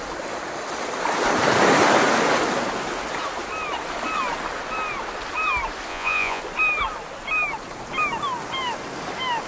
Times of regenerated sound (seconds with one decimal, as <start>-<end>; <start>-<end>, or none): 5.9-6.4